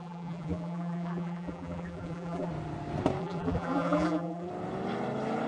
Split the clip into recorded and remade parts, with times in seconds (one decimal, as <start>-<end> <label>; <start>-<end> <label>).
0.0-2.5 remade; 2.5-3.2 recorded; 3.2-4.5 remade; 4.5-5.5 recorded